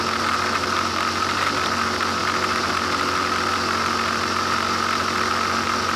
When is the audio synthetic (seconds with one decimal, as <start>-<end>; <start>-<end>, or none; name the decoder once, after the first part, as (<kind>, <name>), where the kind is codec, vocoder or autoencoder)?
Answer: none